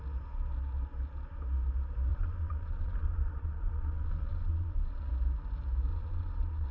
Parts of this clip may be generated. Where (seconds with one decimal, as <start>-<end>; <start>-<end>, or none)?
2.1-5.1; 5.9-6.7